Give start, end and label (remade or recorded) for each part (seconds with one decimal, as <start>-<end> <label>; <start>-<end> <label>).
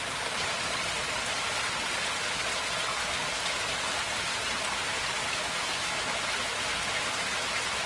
0.0-5.2 recorded; 5.2-6.3 remade; 6.3-7.9 recorded